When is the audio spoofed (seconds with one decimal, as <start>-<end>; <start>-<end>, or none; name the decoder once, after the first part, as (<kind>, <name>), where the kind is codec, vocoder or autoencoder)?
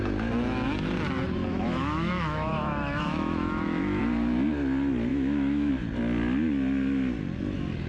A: 1.5-4.0 (autoencoder, DAC-VAE); 5.1-5.7